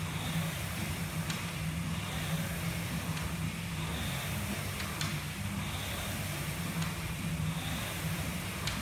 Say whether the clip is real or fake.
real